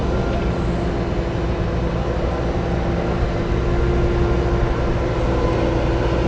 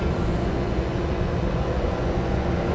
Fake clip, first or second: second